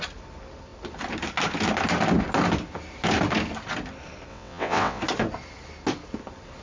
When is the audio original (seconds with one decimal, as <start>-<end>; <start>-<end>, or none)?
0.0-4.3; 5.0-6.6